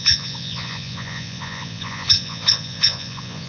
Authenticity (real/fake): fake